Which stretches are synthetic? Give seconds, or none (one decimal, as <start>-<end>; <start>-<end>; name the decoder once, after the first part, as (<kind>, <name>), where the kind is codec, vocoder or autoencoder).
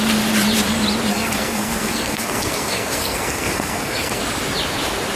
1.1-4.2 (codec, SNAC)